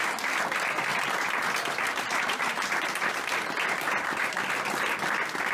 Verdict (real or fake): real